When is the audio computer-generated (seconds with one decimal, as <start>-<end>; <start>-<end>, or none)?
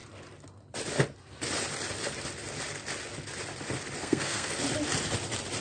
4.0-4.5